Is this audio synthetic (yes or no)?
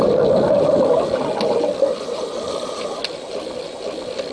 no